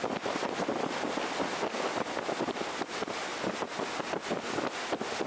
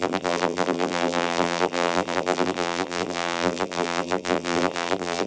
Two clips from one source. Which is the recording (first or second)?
first